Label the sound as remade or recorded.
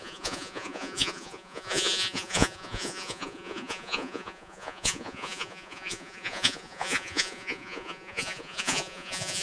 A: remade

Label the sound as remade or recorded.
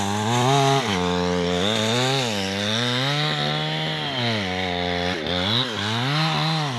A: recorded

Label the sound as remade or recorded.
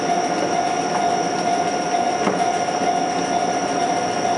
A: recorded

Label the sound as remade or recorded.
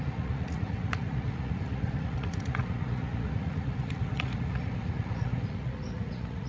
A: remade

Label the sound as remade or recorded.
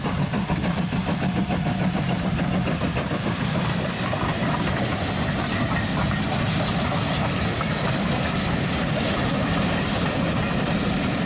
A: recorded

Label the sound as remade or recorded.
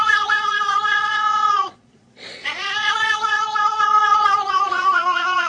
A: remade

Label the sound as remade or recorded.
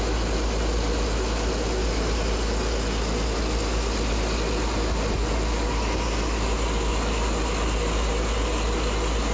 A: recorded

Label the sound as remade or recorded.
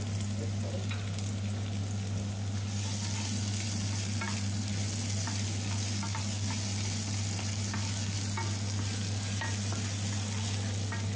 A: recorded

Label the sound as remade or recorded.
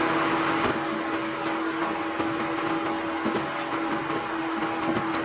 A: recorded